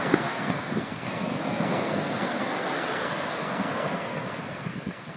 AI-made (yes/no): yes